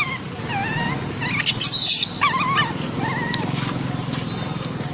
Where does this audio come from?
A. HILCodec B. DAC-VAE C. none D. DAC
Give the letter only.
C